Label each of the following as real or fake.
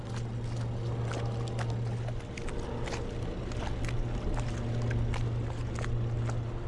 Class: real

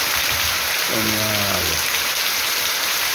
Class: fake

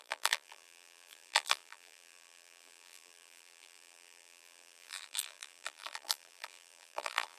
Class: fake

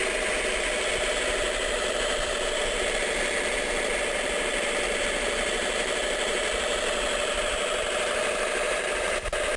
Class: real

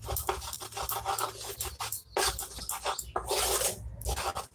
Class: real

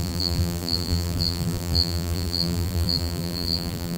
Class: fake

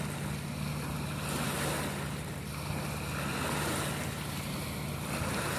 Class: real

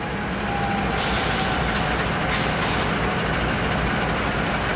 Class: real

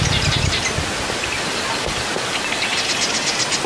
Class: real